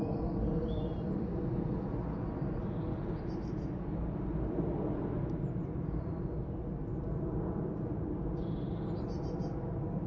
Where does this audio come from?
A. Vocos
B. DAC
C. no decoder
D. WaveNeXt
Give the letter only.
C